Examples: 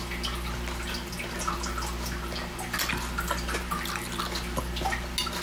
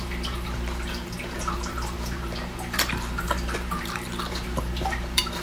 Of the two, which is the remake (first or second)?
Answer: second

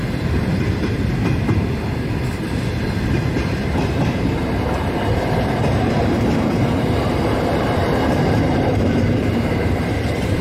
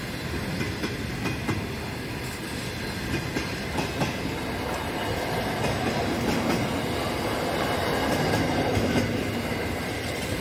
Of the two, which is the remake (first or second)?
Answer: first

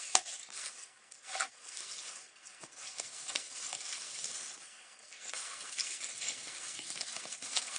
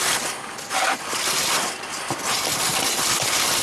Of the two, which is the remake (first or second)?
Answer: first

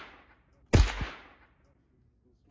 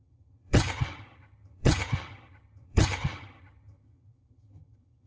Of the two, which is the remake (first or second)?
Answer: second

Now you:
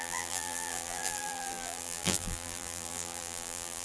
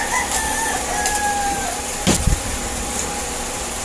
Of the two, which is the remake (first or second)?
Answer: first